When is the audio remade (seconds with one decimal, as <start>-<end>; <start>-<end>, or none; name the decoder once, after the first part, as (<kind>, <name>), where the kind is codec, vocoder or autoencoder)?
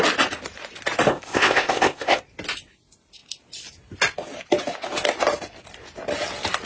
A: 1.1-2.2 (codec, ZipCodec)